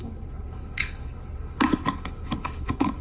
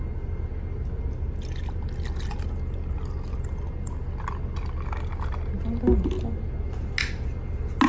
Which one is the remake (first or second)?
first